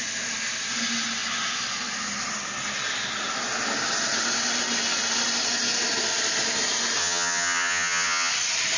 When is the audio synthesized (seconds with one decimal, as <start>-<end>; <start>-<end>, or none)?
7.0-8.3